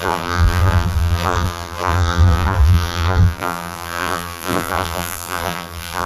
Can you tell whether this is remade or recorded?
remade